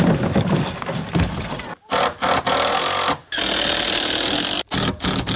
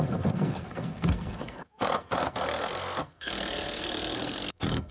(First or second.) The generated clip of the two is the second